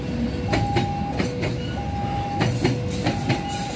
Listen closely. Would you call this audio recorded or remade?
recorded